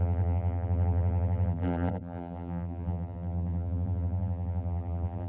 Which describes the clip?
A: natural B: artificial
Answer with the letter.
B